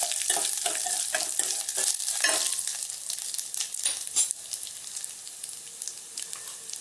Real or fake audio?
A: real